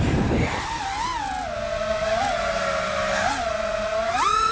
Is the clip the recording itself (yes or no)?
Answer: yes